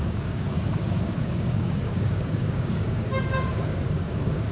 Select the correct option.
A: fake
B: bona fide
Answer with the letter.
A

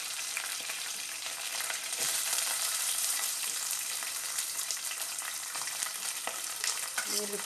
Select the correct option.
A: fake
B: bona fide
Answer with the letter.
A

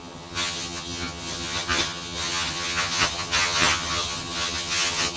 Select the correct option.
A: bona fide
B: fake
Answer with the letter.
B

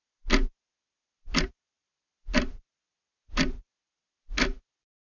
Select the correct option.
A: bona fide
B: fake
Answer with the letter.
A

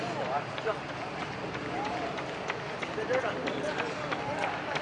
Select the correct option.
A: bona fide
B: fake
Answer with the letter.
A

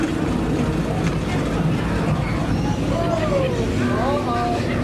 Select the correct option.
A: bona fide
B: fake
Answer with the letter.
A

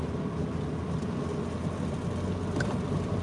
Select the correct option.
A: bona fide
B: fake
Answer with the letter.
A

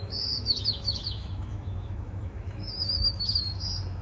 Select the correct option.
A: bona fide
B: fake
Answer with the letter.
B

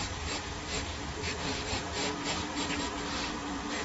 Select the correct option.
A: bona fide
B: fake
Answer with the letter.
B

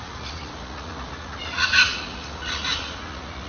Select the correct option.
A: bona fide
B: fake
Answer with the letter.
B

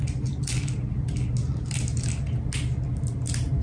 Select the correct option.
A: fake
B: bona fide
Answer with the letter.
B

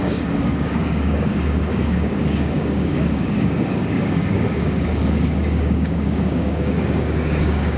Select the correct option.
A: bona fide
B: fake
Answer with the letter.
B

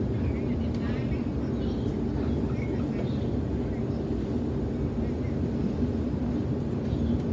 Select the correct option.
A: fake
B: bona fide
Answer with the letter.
B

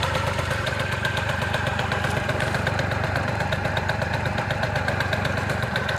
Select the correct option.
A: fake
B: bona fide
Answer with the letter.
A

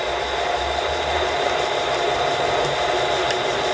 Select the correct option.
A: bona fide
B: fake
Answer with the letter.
B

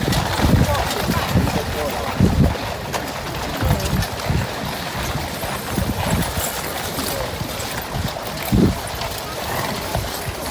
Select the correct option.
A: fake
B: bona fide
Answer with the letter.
B